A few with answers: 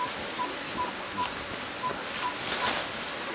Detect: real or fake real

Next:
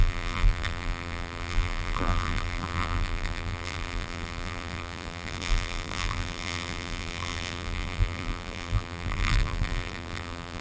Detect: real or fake fake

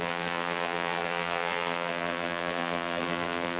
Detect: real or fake fake